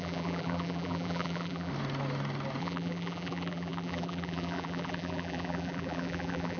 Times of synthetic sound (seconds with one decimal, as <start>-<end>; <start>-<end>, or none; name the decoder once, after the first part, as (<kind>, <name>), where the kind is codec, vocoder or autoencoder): 0.0-1.7 (vocoder, BigVGAN v2); 2.6-6.6